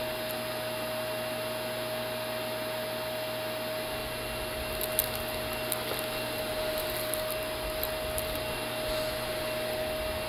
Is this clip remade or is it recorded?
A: recorded